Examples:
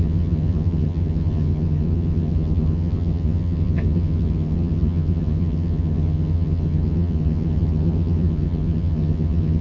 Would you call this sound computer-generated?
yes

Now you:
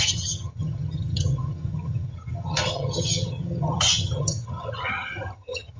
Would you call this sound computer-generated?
yes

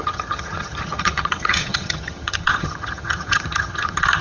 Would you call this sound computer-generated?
yes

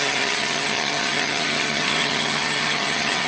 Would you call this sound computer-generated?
yes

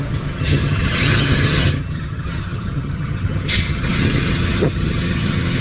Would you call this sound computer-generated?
yes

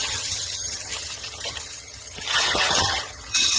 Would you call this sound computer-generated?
yes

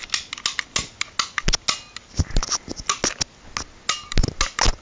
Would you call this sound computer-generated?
no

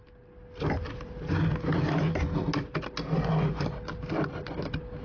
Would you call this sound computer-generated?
no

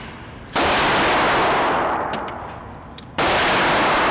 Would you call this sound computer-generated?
no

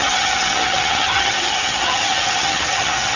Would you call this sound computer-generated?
yes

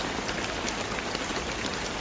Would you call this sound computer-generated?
no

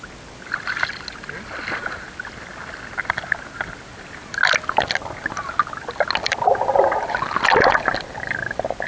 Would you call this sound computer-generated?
no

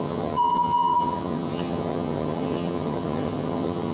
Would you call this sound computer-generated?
yes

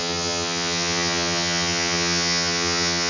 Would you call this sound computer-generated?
yes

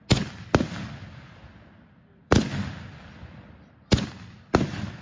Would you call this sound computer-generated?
no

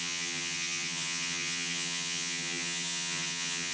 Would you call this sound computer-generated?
yes